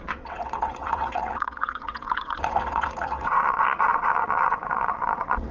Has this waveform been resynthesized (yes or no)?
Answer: yes